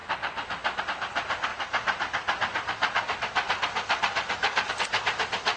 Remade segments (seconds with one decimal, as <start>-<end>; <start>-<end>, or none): none